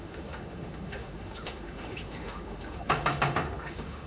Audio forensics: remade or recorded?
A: remade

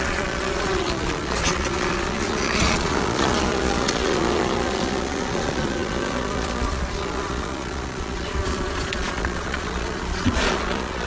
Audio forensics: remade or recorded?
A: remade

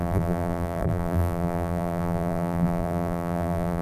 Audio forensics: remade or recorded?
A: remade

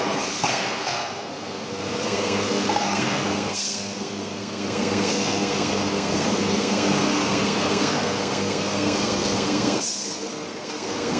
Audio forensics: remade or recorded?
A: remade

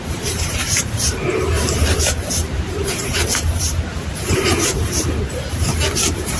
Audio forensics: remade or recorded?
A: remade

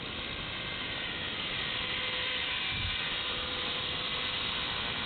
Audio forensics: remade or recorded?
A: recorded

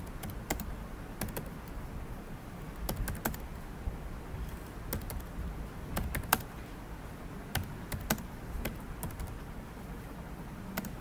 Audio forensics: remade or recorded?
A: recorded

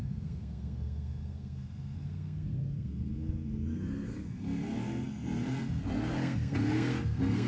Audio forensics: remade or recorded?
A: remade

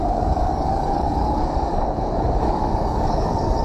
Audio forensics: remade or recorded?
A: remade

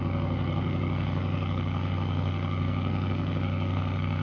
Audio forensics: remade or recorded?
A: remade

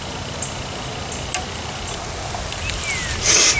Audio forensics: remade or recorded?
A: recorded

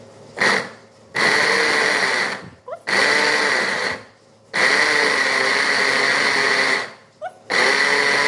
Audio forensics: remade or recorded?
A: recorded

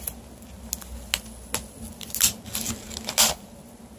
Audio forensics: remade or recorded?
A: recorded